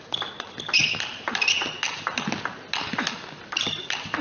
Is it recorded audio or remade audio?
recorded